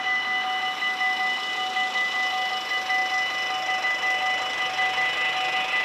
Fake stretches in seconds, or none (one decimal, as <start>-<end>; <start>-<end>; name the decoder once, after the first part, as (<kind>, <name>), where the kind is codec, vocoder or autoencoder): none